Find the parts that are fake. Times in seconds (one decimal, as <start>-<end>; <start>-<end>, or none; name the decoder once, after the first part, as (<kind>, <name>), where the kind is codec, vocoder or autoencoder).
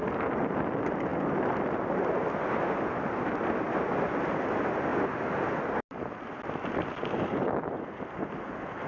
none